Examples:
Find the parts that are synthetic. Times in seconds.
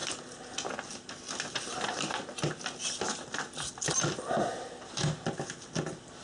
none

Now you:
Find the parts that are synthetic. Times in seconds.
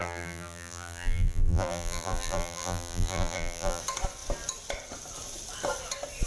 0.0-3.8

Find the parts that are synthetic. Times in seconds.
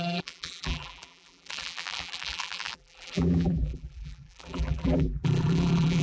0.0-6.0